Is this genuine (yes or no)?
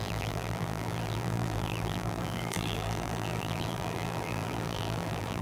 no